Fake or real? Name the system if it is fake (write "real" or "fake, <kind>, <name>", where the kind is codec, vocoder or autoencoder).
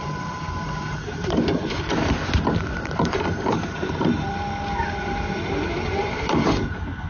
fake, vocoder, BigVGAN v2